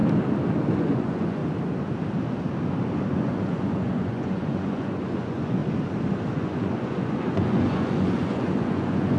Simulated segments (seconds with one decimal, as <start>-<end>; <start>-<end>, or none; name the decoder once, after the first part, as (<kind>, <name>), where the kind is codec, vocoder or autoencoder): 0.8-1.4 (vocoder, Vocos); 3.1-5.6; 6.3-9.2